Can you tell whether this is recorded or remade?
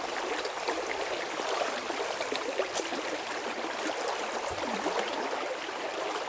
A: recorded